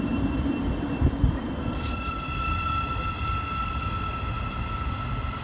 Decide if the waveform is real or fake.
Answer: fake